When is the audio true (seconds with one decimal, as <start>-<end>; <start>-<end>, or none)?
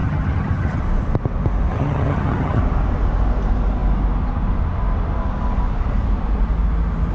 0.8-1.7; 2.6-7.1